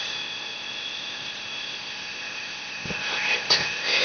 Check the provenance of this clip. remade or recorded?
remade